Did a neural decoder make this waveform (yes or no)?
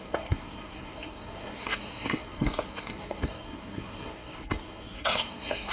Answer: yes